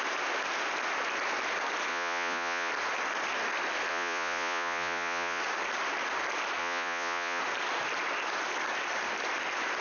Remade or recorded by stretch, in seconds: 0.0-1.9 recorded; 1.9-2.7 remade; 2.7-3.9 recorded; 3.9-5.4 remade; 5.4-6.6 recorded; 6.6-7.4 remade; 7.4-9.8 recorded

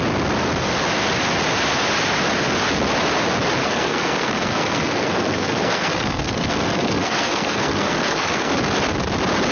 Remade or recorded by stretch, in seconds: 0.0-3.6 recorded; 3.6-8.5 remade; 8.5-9.5 recorded

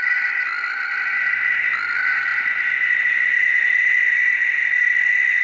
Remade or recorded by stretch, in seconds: 0.0-5.4 recorded